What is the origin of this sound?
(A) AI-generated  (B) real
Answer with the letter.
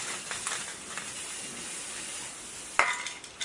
B